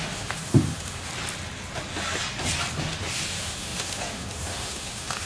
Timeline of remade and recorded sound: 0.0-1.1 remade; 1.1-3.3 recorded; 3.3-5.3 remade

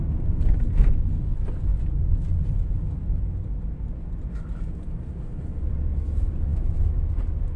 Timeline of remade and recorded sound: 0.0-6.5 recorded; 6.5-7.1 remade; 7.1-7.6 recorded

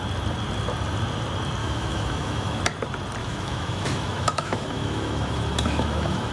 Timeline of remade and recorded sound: 0.0-1.6 recorded; 1.6-2.6 remade; 2.6-3.2 recorded; 3.2-6.3 remade

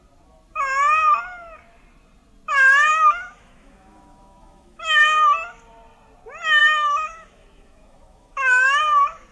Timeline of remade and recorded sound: 0.0-2.9 recorded; 2.9-5.0 remade; 5.0-6.6 recorded; 6.6-8.8 remade; 8.8-9.3 recorded

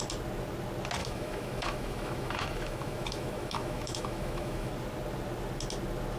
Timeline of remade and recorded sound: 0.0-1.0 recorded; 1.0-4.7 remade; 4.7-6.2 recorded

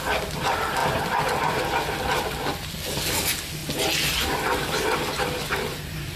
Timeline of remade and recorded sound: 0.0-6.2 recorded